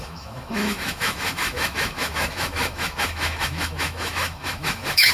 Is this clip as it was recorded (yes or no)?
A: no